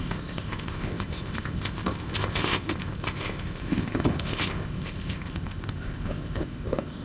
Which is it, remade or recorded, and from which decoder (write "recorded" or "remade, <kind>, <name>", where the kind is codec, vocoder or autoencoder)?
remade, codec, ZipCodec